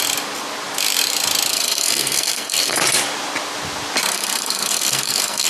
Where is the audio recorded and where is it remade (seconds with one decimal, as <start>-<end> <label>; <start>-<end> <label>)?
0.0-1.5 recorded; 1.5-2.8 remade; 2.8-4.1 recorded; 4.1-5.5 remade